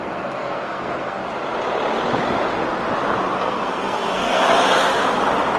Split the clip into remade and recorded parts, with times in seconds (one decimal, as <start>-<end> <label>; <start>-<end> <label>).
0.0-1.2 remade; 1.2-3.4 recorded; 3.4-4.5 remade; 4.5-5.6 recorded